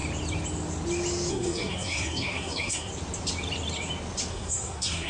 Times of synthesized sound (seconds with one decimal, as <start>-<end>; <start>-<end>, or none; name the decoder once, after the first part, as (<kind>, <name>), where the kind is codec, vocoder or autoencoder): 1.3-2.9 (codec, SNAC); 4.3-5.1